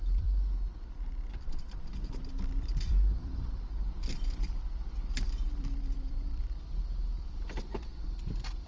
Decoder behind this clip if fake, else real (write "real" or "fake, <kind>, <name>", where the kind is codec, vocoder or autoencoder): fake, vocoder, BigVGAN v2